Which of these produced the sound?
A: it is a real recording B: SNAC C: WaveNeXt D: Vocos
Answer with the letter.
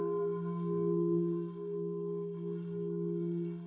B